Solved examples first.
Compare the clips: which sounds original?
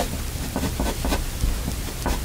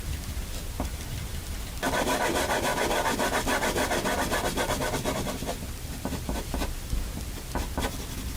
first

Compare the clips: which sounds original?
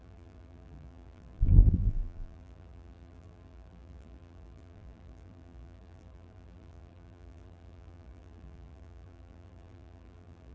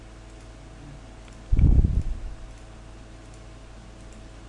second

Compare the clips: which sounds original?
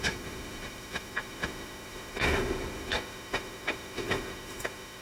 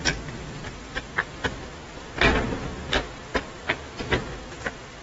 second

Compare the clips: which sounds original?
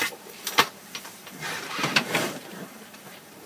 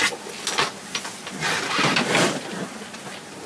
second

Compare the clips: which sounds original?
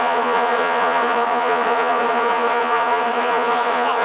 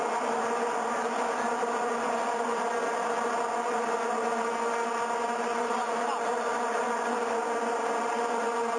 second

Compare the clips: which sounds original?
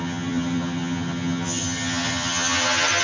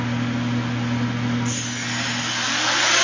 second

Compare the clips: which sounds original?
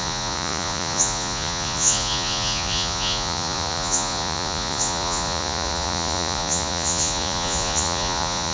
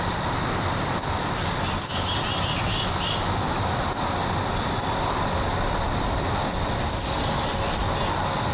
second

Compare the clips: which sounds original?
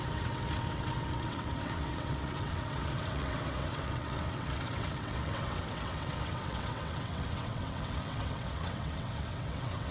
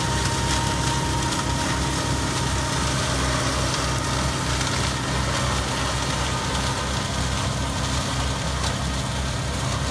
second